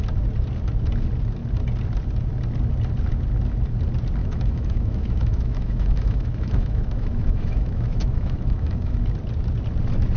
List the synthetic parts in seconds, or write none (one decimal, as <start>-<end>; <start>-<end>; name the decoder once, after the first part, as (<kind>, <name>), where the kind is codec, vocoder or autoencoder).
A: 4.2-9.0 (autoencoder, DAC-VAE)